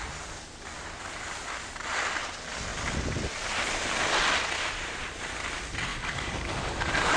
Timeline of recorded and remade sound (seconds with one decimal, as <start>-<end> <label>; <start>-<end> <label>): 0.0-5.9 recorded; 5.9-7.2 remade